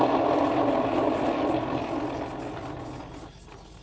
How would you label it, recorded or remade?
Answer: recorded